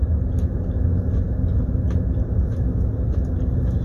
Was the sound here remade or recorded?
recorded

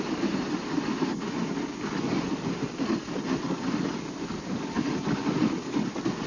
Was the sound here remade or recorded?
recorded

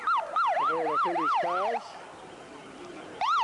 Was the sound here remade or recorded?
recorded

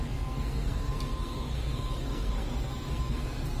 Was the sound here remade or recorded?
remade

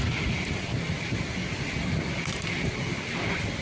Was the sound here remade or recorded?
recorded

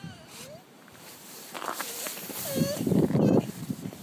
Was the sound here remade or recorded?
remade